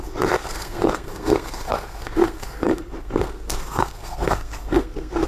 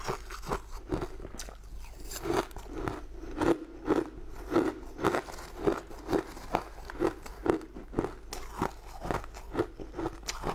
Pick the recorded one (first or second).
second